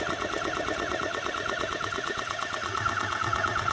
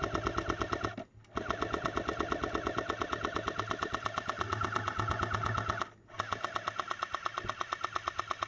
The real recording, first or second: second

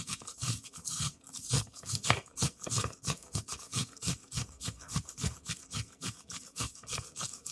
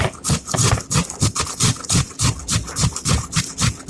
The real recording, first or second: second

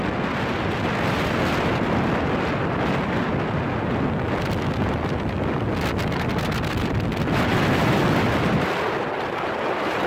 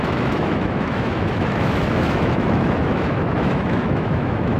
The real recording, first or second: first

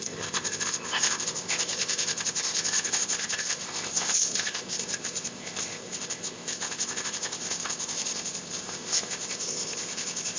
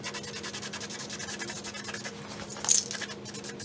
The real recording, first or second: second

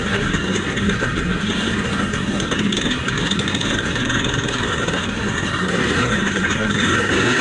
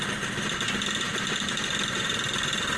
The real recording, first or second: second